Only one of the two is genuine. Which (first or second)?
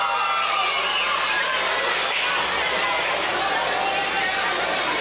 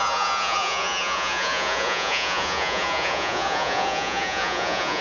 first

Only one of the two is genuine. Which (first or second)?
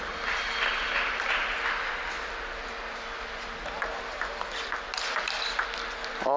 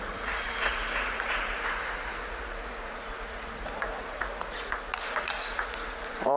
first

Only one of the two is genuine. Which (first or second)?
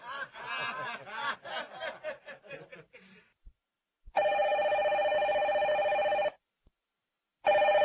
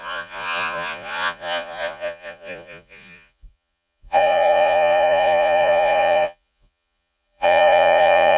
first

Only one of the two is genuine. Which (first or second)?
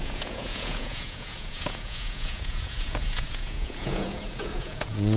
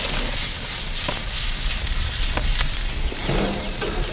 second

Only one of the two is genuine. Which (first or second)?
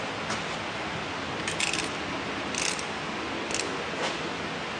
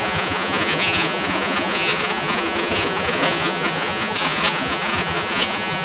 first